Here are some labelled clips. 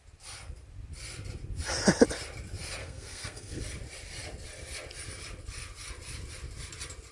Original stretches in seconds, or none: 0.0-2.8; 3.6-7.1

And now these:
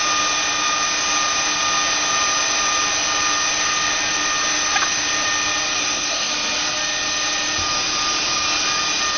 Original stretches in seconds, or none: 0.0-5.8; 6.3-9.2

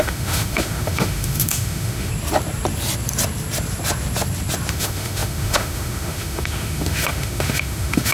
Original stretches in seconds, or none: 2.1-4.7

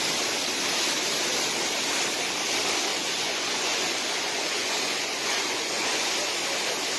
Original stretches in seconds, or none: 0.0-2.9; 6.1-7.0

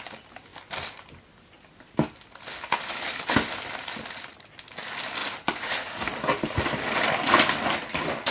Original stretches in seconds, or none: 0.0-5.2; 6.0-8.3

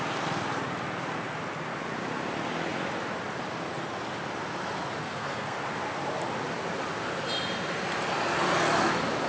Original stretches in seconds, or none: 0.0-5.0; 5.6-9.3

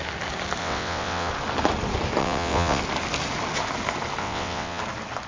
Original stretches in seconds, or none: 0.0-0.6; 1.3-2.2; 2.8-4.2; 4.8-5.3